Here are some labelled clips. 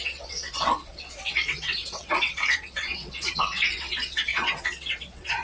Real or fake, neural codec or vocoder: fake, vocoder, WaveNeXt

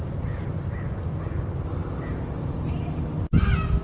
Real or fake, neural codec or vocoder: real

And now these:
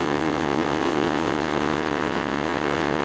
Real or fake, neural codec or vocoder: fake, vocoder, WaveNeXt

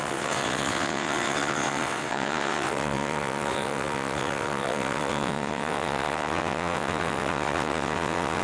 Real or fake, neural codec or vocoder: fake, vocoder, WaveNeXt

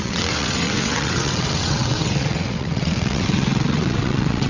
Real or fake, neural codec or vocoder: fake, vocoder, WaveNeXt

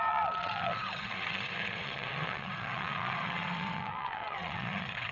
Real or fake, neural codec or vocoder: fake, vocoder, WaveNeXt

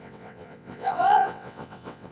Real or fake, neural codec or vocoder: fake, vocoder, WaveNeXt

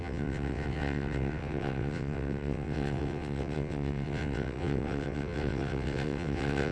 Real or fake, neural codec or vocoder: fake, vocoder, WaveNeXt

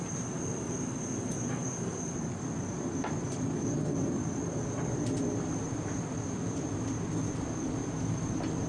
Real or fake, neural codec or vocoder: real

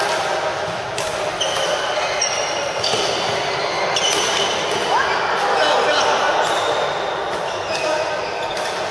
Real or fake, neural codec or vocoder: real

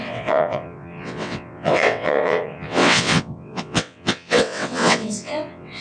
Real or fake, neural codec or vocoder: fake, vocoder, WaveNeXt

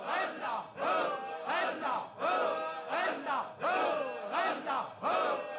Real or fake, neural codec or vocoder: real